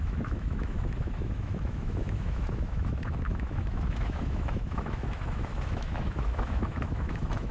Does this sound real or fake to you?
fake